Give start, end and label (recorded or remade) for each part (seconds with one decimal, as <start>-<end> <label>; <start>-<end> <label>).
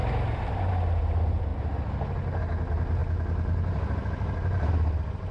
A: 0.0-0.7 remade; 0.7-5.3 recorded